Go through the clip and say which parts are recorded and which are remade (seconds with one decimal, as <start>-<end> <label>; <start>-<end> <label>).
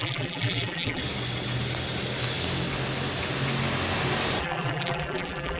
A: 0.0-1.0 remade; 1.0-4.4 recorded; 4.4-5.6 remade